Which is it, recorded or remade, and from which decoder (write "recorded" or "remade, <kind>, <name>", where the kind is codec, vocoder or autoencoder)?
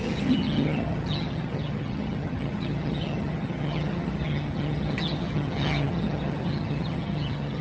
remade, vocoder, HiFi-GAN